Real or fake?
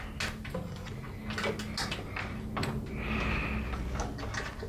real